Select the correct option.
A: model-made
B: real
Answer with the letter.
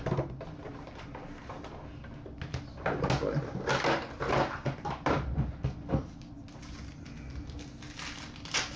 B